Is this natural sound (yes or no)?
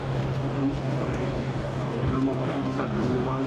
no